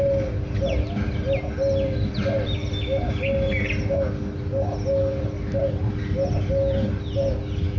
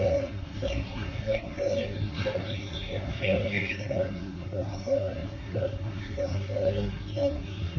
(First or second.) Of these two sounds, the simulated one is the second